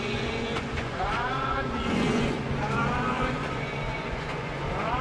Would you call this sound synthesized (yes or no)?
yes